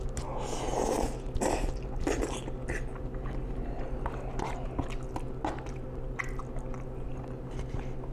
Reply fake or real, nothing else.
real